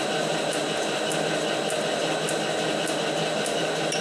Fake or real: real